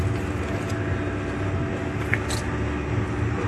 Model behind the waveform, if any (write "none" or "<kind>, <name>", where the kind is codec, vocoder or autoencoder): none